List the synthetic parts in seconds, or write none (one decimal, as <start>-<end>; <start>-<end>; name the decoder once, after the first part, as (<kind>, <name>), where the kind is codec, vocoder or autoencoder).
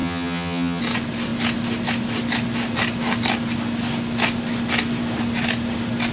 0.0-0.8 (vocoder, HiFi-GAN)